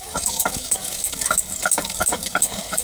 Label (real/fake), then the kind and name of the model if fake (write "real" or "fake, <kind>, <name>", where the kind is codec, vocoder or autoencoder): fake, codec, DAC